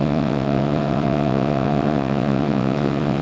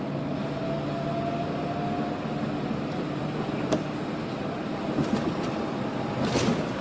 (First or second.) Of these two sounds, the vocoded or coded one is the first